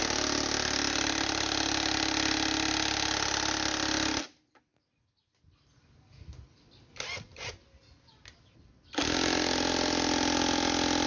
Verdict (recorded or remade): recorded